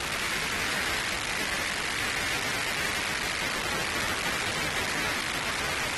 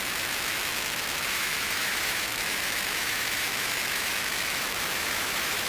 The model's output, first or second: second